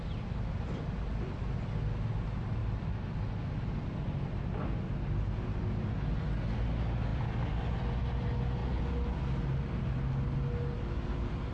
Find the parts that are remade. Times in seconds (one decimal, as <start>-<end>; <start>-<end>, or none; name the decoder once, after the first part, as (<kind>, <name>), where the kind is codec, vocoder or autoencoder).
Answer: none

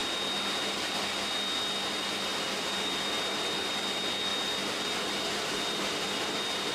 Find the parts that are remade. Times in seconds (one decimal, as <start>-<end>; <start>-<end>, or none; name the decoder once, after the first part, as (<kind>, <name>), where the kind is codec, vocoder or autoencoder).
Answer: 2.3-3.5 (vocoder, BigVGAN v2)

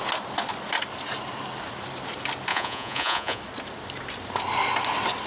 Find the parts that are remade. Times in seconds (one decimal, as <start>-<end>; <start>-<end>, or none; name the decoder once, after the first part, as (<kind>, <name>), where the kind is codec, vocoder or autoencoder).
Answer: 2.5-3.4 (vocoder, Vocos)